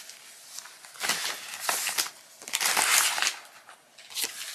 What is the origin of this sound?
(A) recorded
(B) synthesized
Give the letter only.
A